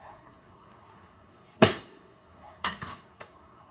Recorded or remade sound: remade